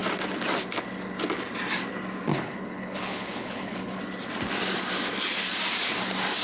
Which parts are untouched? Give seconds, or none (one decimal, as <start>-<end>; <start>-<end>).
0.0-2.3; 4.0-6.4